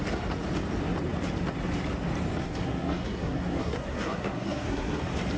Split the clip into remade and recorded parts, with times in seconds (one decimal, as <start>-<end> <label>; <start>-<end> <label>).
0.0-2.4 recorded; 2.4-5.0 remade; 5.0-5.4 recorded